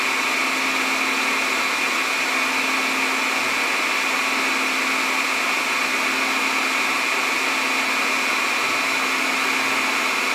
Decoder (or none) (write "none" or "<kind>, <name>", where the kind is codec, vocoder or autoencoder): none